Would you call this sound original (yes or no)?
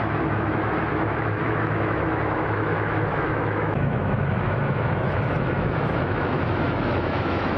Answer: no